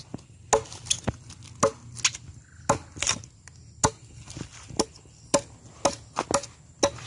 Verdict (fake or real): real